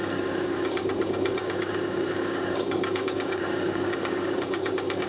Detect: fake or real fake